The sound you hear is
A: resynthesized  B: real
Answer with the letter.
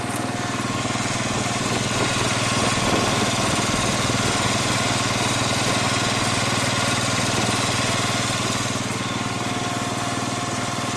B